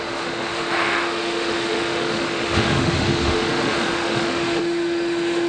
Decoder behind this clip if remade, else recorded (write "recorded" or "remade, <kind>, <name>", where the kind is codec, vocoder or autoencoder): remade, autoencoder, DAC-VAE